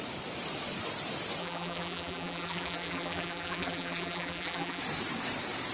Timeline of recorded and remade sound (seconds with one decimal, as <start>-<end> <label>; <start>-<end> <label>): 0.0-1.4 recorded; 1.4-4.8 remade; 4.8-5.7 recorded